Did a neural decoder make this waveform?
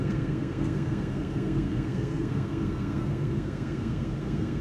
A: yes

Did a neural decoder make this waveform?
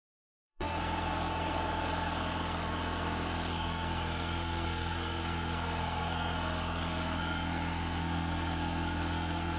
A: yes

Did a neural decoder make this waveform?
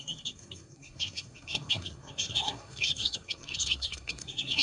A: yes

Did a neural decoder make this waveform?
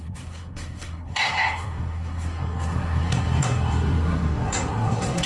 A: yes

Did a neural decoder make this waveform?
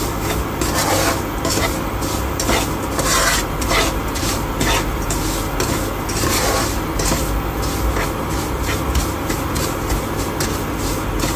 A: no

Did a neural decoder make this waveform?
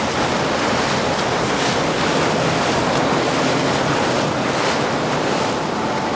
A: no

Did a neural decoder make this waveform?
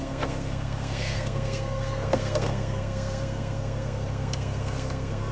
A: yes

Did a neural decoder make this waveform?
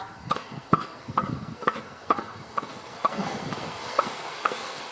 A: yes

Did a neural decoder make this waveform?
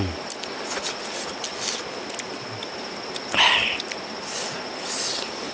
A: no